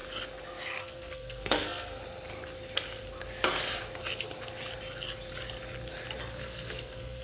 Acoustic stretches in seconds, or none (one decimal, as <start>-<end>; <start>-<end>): 0.0-0.8; 2.0-6.3

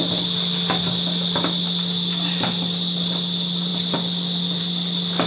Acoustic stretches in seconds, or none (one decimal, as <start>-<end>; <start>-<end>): 0.0-5.3

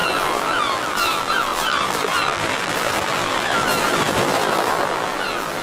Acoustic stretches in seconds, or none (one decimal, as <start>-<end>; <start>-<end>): none

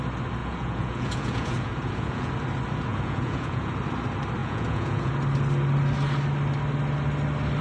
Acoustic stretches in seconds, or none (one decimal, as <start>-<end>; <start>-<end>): 0.0-0.4; 2.3-2.9; 3.7-4.4; 5.1-7.6

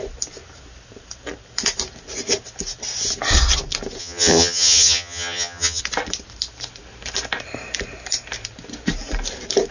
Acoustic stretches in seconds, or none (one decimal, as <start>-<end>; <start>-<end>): 0.0-4.0; 5.8-9.7